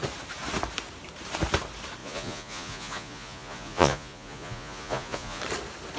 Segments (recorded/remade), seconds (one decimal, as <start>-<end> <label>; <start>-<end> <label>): 0.0-2.0 recorded; 2.0-5.4 remade; 5.4-6.0 recorded